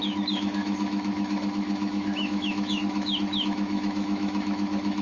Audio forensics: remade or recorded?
remade